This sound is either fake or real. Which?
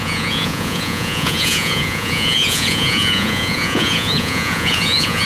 fake